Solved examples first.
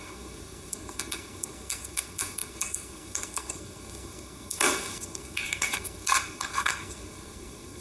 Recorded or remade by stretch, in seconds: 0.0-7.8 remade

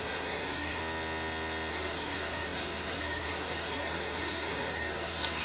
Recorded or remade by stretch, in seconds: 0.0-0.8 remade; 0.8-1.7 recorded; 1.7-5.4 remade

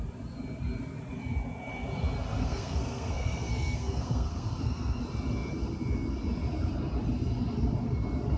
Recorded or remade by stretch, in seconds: 0.0-2.4 recorded; 2.4-5.0 remade; 5.0-8.4 recorded